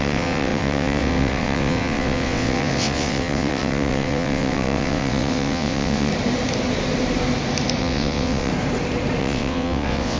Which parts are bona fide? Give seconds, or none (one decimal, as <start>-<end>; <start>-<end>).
6.1-7.8; 8.5-9.2